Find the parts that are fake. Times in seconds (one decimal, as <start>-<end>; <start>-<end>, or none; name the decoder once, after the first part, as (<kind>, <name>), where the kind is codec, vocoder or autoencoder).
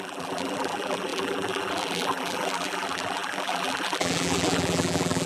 0.0-5.3 (vocoder, BigVGAN v2)